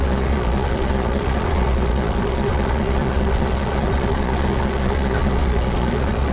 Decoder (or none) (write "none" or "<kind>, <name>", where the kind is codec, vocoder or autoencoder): vocoder, Vocos